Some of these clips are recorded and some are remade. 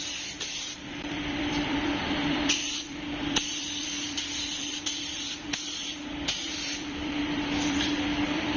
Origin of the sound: remade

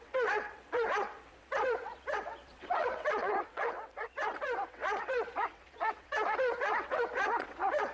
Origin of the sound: remade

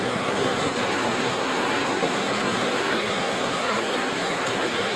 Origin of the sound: remade